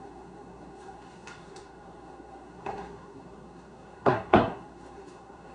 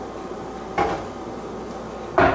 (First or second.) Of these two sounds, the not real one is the first